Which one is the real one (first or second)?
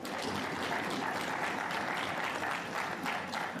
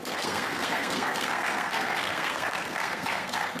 first